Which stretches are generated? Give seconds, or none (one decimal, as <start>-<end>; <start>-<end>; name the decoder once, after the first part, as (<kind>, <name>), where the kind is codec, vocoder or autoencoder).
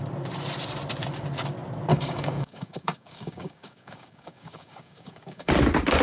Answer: 1.9-5.5 (codec, DAC)